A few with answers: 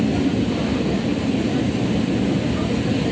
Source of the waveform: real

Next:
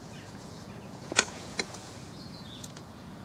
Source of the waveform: fake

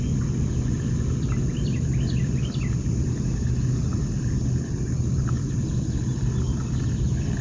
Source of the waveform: real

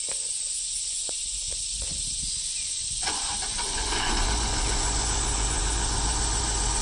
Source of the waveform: fake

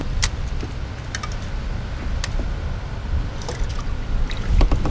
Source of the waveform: real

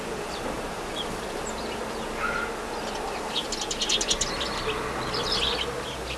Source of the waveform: real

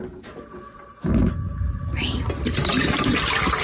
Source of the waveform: real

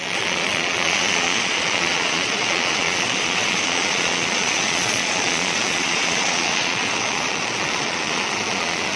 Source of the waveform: fake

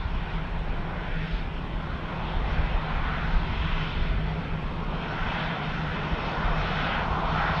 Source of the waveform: real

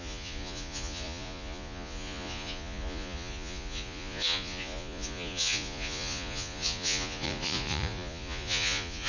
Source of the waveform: fake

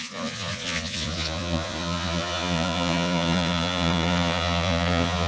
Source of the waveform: fake